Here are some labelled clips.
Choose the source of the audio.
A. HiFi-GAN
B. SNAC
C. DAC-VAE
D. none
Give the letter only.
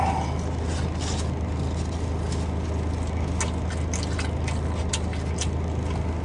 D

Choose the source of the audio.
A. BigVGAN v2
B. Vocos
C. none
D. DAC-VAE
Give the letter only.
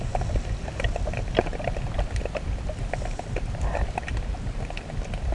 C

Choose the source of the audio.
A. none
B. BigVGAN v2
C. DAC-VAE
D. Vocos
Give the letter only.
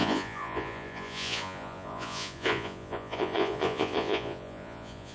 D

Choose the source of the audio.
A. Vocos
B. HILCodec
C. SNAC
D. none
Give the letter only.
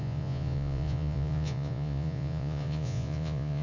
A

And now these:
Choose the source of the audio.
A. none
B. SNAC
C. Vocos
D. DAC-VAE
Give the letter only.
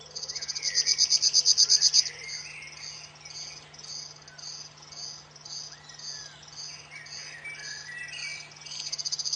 A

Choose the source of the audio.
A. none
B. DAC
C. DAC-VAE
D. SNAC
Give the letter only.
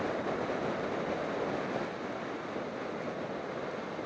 A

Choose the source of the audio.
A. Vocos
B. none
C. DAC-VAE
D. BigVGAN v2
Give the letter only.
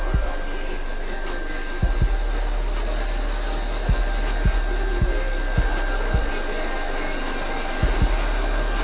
B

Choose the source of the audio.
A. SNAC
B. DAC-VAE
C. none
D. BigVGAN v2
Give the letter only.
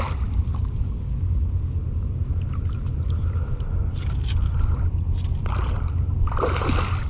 C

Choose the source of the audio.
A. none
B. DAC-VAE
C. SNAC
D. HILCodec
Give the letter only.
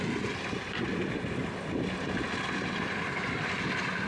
A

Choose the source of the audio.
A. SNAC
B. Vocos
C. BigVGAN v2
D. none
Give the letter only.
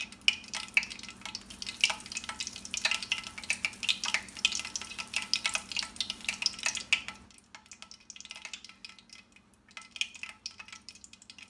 D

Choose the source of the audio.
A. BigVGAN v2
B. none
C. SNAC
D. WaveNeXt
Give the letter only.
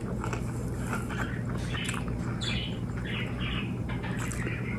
B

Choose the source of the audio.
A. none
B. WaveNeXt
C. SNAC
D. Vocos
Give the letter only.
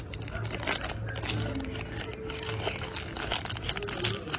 A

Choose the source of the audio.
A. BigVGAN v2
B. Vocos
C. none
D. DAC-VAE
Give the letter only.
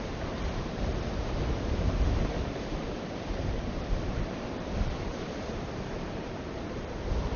A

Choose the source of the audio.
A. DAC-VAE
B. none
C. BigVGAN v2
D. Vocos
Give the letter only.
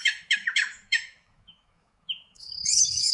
A